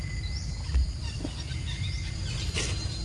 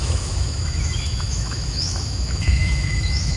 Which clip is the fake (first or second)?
second